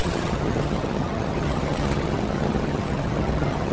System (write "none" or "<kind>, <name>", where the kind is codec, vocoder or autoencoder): vocoder, HiFi-GAN